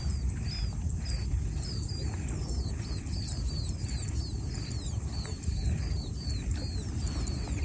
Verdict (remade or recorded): recorded